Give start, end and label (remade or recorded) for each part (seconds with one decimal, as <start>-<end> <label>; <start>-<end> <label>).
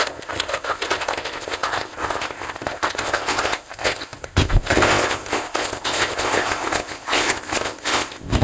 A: 0.0-8.4 remade